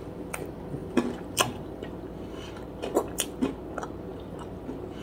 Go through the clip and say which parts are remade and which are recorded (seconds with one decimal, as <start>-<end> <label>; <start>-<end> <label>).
0.0-0.8 recorded; 0.8-3.5 remade; 3.5-5.0 recorded